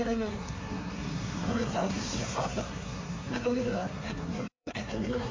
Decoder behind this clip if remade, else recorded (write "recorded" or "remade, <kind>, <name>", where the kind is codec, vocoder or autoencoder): remade, codec, SNAC